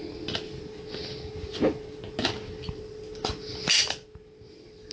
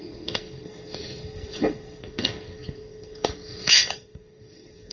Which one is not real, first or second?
second